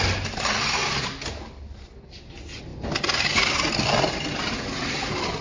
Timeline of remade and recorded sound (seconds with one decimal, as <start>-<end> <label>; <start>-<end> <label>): 0.0-5.4 recorded